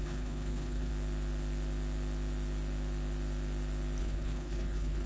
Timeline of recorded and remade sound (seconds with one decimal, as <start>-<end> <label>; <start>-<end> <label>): 0.0-0.9 remade; 0.9-4.0 recorded; 4.0-5.1 remade